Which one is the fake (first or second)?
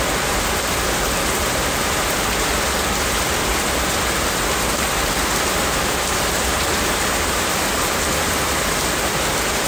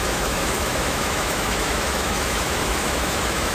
second